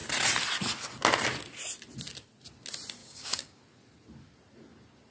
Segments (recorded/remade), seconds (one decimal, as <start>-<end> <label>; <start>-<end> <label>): 0.0-3.0 recorded; 3.0-3.6 remade; 3.6-5.1 recorded